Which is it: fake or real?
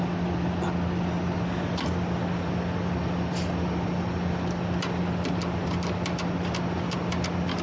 real